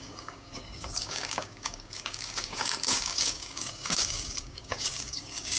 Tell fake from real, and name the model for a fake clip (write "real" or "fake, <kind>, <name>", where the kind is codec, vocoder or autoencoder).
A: fake, codec, DAC